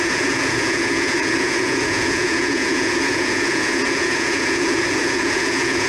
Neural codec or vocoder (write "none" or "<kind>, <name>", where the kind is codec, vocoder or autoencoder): vocoder, Vocos